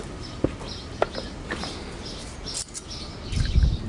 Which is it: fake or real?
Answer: real